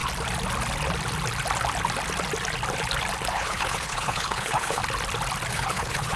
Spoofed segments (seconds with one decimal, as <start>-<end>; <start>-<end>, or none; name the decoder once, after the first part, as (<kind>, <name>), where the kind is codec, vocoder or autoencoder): 3.3-4.8 (codec, HILCodec); 5.5-6.2